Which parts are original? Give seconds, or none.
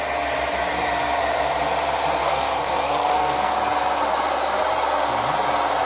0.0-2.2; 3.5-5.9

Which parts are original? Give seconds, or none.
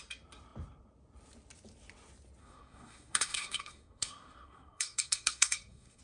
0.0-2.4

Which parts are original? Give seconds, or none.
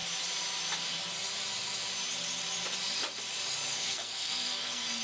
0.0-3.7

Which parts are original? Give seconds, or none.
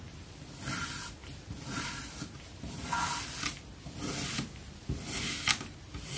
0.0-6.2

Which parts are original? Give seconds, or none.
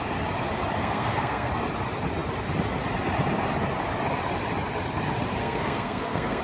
0.0-0.8; 1.5-5.4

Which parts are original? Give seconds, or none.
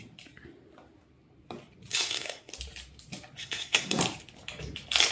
0.0-1.9; 2.5-3.4; 4.0-5.1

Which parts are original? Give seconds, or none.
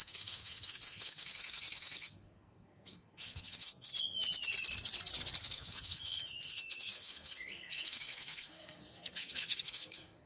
3.9-5.4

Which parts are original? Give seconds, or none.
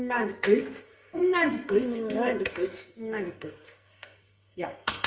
none